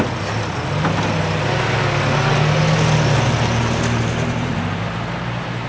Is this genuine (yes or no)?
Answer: yes